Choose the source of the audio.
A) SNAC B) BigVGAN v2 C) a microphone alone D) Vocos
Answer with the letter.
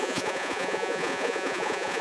D